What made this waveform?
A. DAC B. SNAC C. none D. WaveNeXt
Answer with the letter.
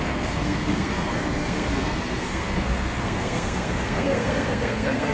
B